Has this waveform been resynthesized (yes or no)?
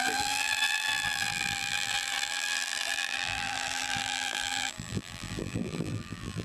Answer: yes